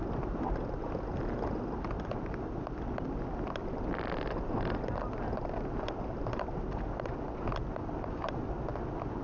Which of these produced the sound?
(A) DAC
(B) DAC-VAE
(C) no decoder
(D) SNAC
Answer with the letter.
C